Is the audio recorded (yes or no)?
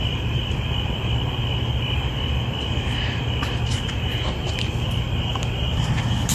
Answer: yes